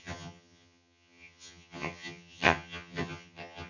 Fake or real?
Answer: fake